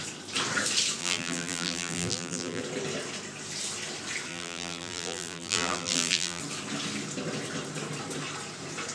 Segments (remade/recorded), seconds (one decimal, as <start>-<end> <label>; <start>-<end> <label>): 0.0-1.0 recorded; 1.0-2.6 remade; 2.6-4.3 recorded; 4.3-6.4 remade; 6.4-8.9 recorded